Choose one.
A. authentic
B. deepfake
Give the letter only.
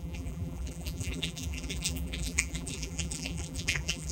B